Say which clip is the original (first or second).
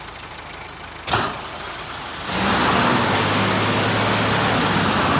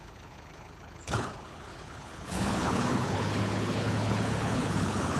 first